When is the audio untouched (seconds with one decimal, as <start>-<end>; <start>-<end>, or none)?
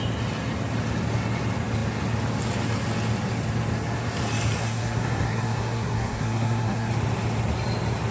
0.0-4.6; 6.9-8.1